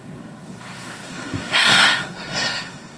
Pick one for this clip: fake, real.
fake